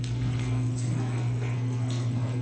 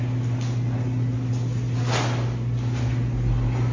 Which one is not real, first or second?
first